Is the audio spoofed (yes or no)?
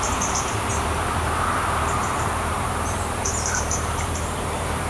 yes